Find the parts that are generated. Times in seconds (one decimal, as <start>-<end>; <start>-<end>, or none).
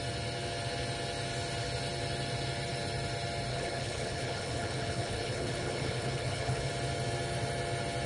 3.5-6.7